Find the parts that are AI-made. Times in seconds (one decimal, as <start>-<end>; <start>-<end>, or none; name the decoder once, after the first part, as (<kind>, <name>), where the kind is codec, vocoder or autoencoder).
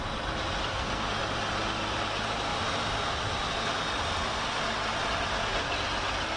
0.7-1.2 (codec, SNAC)